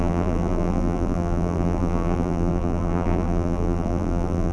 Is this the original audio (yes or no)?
no